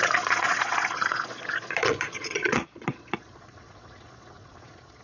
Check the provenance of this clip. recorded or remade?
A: remade